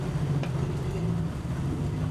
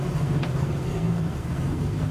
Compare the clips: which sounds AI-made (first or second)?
second